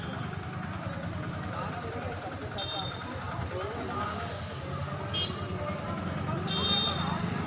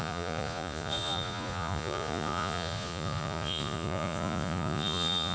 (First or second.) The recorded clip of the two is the first